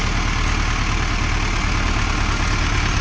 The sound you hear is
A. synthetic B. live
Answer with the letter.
B